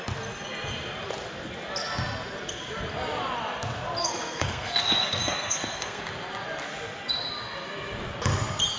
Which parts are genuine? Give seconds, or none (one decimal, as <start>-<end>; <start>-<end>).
0.0-4.0; 6.0-8.8